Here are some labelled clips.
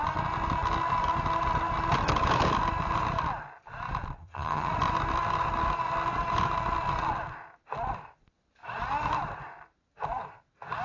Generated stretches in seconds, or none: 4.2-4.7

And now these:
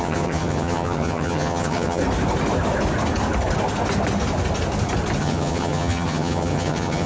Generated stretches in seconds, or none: 0.0-2.0; 5.2-7.1